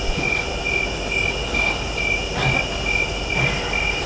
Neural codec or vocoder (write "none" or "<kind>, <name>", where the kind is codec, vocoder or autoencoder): none